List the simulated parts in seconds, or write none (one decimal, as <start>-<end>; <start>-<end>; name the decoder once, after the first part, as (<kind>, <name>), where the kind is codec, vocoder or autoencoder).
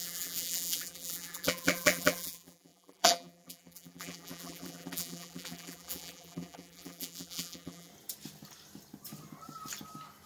0.0-7.9 (vocoder, BigVGAN v2)